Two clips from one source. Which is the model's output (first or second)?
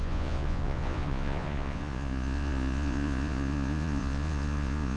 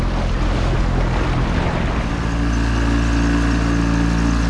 first